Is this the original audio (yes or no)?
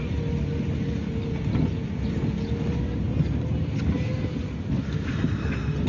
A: yes